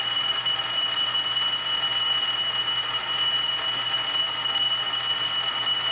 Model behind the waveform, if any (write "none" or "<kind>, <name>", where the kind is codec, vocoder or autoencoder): none